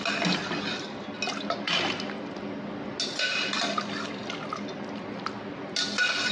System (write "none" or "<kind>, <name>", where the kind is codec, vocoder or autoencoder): none